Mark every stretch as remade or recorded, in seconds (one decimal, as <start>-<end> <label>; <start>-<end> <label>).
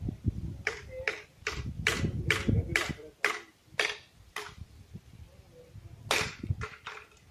0.0-7.3 recorded